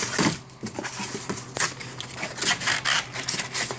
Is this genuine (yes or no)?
yes